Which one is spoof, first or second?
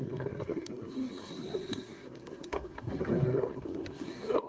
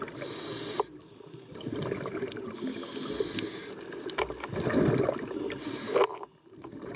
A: first